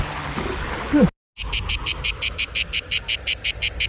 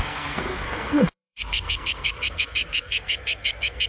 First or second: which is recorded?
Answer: first